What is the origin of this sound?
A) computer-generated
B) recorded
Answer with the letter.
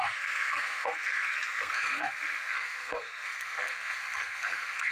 A